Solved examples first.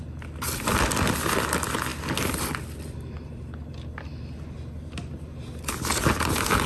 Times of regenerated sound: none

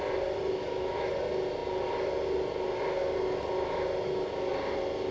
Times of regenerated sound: 0.6-1.1 (autoencoder, DAC-VAE)

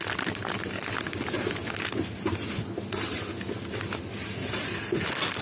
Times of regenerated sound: none

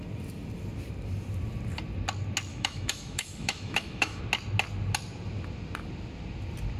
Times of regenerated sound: 2.5-4.2 (autoencoder, DAC-VAE)

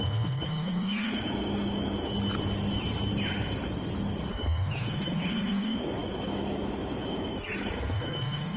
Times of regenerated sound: 0.0-2.1 (autoencoder, DAC-VAE); 4.3-8.6

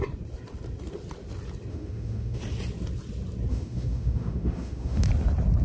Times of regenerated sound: 1.7-2.4 (autoencoder, DAC-VAE); 3.5-5.1